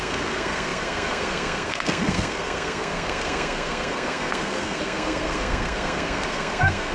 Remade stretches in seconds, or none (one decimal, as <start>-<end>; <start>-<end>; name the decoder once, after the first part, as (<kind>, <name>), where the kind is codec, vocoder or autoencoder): 0.0-6.9 (codec, SNAC)

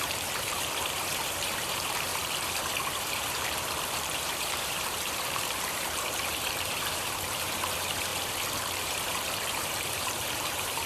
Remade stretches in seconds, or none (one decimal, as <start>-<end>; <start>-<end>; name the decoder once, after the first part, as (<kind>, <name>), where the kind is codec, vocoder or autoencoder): 0.0-8.1 (vocoder, BigVGAN v2); 8.8-10.9